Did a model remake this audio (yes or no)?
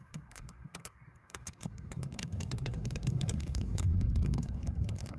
yes